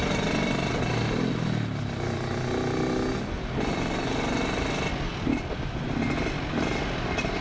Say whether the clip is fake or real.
real